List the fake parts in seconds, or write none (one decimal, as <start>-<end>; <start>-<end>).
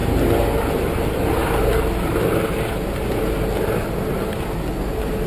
none